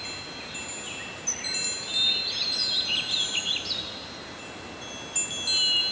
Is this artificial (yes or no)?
no